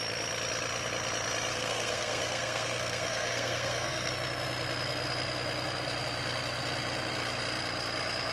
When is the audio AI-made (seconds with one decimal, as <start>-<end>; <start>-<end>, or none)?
1.5-4.1